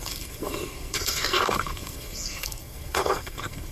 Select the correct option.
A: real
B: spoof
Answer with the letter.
B